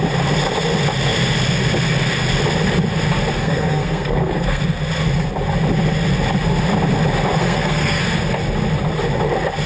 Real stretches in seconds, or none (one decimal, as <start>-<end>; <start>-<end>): 0.0-3.4; 4.6-7.4; 8.0-9.7